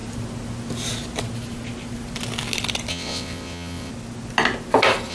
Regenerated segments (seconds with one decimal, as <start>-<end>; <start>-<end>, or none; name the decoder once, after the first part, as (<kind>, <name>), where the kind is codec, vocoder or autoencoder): 2.9-3.9 (vocoder, WaveNeXt)